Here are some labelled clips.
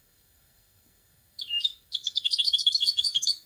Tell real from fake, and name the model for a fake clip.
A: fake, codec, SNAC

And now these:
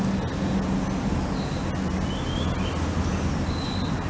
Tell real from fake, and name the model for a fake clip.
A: real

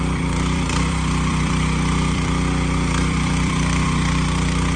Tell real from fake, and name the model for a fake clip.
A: fake, vocoder, BigVGAN v2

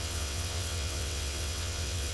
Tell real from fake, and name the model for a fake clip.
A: fake, vocoder, WaveNeXt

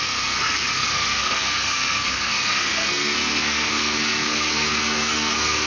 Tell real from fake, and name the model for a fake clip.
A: fake, codec, SNAC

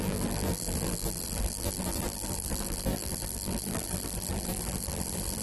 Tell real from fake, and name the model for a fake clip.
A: fake, vocoder, BigVGAN v2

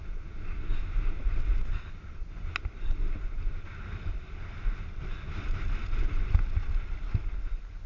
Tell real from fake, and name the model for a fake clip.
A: real